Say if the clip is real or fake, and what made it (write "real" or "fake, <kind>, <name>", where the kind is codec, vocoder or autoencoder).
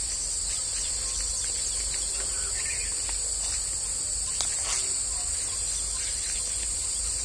real